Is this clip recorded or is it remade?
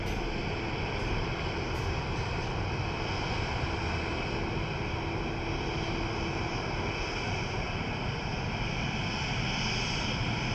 recorded